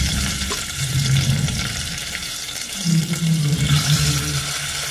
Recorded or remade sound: remade